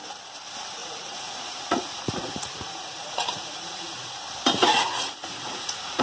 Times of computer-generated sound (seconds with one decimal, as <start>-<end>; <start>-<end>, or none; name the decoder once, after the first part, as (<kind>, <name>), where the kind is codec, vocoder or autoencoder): 0.8-4.1 (vocoder, Vocos); 4.6-6.0